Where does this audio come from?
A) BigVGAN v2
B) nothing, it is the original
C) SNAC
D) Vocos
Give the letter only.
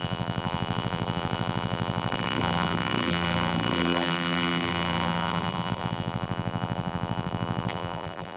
A